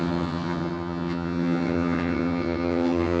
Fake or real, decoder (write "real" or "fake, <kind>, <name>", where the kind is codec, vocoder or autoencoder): fake, vocoder, HiFi-GAN